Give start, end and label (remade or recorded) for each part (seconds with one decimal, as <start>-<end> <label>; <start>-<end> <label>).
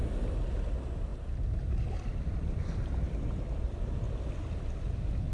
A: 0.0-5.3 recorded